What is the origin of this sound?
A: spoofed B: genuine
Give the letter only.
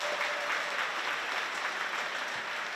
B